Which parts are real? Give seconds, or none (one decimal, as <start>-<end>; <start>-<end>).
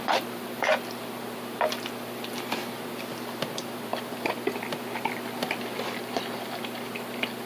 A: 0.0-7.5